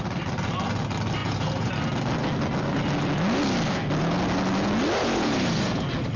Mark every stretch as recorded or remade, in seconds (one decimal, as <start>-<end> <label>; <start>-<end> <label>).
0.0-1.2 recorded; 1.2-1.7 remade; 1.7-5.0 recorded; 5.0-5.8 remade; 5.8-6.2 recorded